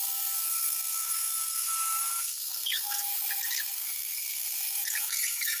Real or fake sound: fake